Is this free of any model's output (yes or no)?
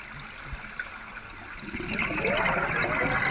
yes